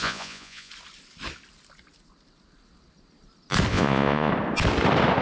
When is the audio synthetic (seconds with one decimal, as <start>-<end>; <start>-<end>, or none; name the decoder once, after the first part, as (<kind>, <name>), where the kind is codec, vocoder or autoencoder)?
0.0-0.7 (vocoder, Vocos); 3.7-4.3